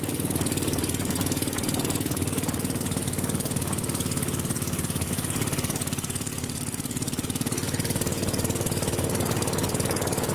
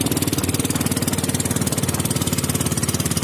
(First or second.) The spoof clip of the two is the first